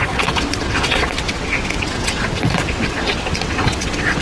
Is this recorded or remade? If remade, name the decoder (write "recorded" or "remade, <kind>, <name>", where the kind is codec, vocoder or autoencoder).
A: remade, vocoder, WaveNeXt